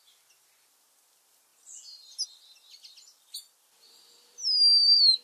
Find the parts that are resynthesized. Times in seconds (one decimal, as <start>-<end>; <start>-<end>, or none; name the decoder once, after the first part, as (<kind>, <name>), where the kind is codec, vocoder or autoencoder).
none